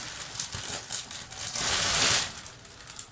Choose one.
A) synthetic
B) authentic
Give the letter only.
B